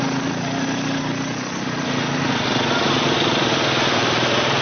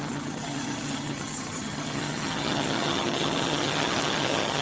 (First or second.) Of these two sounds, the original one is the first